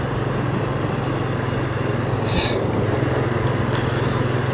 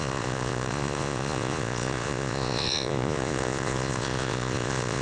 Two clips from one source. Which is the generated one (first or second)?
second